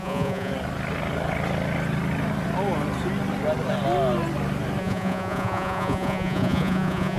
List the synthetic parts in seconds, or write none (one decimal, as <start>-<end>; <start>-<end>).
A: 0.0-0.5; 4.8-7.2